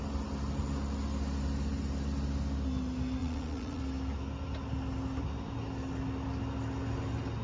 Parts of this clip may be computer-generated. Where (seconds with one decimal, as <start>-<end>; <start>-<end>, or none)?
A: 3.2-3.8